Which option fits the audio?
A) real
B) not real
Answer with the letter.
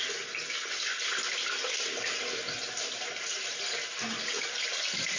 A